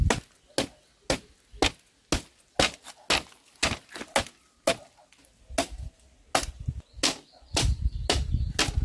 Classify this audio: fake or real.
real